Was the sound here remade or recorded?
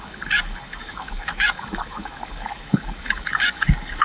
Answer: remade